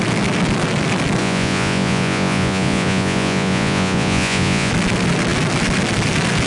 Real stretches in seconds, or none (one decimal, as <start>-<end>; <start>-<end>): 0.0-1.2; 4.7-6.5

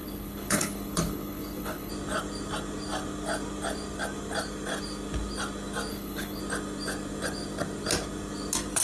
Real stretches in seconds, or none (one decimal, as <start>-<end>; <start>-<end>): 1.9-5.9; 6.4-8.8

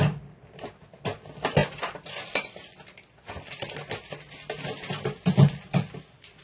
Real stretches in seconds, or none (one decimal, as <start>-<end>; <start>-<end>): 0.0-6.4

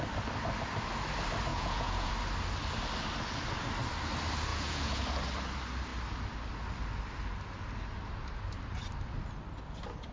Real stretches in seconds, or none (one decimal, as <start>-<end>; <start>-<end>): 0.0-1.5; 2.1-4.5; 5.0-10.1